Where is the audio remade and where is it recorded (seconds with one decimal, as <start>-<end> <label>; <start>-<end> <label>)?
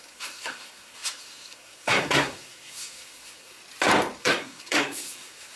0.0-3.6 remade; 3.6-4.2 recorded; 4.2-5.6 remade